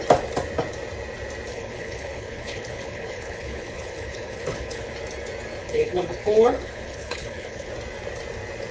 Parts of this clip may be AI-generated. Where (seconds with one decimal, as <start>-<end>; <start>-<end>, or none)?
1.5-4.9; 5.6-7.7